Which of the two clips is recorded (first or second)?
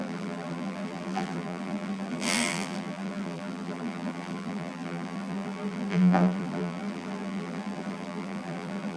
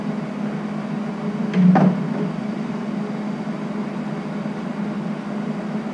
second